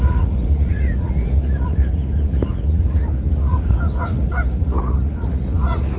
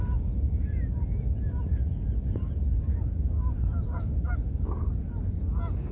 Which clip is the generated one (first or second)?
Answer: first